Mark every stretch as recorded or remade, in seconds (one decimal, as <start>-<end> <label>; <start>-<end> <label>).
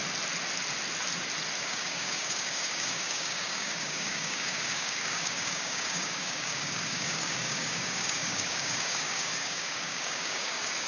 0.0-1.6 recorded; 1.6-10.9 remade